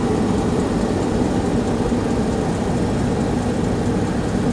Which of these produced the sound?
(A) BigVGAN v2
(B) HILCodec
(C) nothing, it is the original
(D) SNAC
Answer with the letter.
C